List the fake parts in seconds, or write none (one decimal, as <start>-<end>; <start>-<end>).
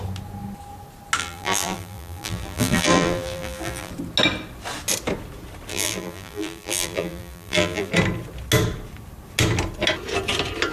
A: 1.2-3.9; 5.7-7.9